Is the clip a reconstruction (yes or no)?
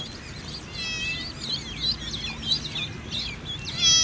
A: no